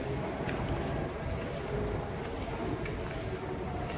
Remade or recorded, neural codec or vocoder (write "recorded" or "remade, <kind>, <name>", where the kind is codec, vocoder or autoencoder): recorded